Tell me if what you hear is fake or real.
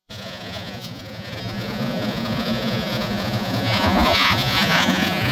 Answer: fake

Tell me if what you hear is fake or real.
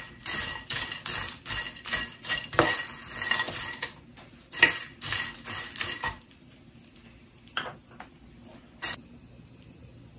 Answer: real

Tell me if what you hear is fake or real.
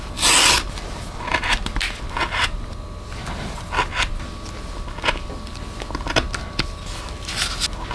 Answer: real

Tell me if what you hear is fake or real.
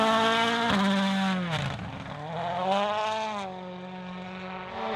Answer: real